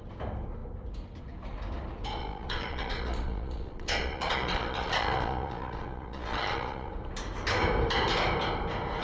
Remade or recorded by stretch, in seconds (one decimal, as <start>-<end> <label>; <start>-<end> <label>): 0.0-2.2 recorded; 2.2-6.9 remade; 6.9-9.0 recorded